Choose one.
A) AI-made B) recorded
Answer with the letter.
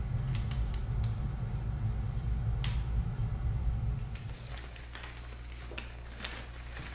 B